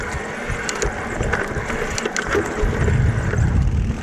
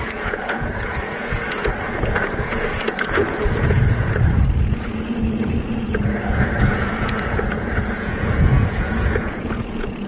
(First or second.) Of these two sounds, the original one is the first